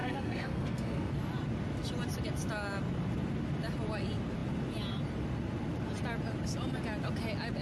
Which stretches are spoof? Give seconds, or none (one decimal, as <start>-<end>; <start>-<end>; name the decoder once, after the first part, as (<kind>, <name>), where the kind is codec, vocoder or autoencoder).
0.0-1.1 (codec, SNAC)